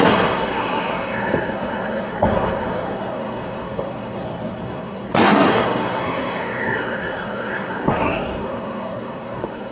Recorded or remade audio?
remade